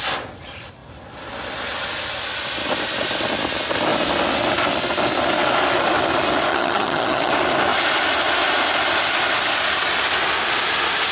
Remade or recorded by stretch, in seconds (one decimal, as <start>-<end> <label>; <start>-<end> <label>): 0.0-6.5 recorded; 6.5-7.3 remade; 7.3-11.1 recorded